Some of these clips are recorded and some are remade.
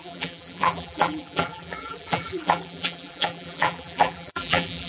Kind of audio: remade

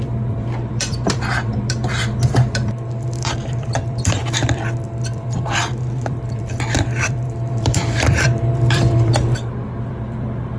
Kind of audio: remade